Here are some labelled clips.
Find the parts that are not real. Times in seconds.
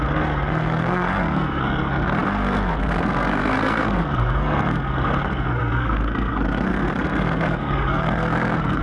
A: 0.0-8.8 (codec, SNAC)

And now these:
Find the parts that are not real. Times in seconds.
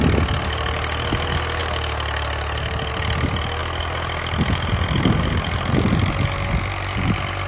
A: none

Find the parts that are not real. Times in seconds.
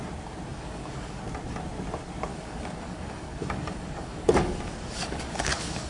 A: 0.5-1.2 (codec, DAC); 2.3-5.9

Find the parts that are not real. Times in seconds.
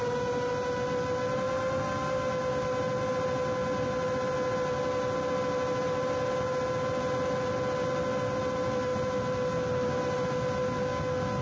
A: none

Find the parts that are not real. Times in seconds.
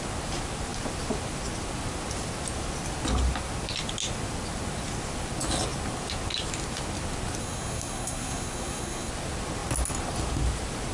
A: 7.4-9.1 (codec, SNAC)